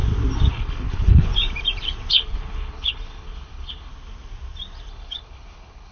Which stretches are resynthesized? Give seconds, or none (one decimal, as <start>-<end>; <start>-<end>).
0.5-1.3; 2.1-3.9; 4.9-5.9